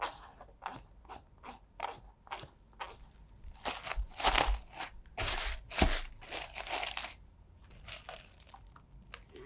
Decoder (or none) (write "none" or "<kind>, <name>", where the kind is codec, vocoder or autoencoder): none